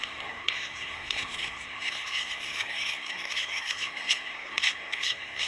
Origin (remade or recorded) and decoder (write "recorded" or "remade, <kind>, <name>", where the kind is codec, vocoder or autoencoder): remade, codec, SNAC